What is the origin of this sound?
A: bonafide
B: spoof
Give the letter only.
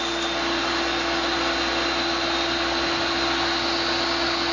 A